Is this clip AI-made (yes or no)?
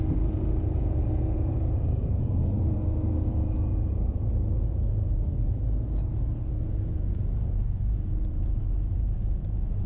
yes